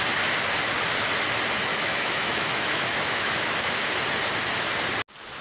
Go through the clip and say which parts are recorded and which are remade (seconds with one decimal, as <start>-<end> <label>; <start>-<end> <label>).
0.0-1.7 recorded; 1.7-3.7 remade; 3.7-5.4 recorded